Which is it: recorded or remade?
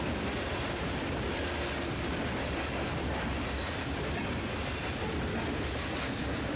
recorded